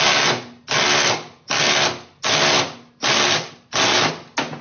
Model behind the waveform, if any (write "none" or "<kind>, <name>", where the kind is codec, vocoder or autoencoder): none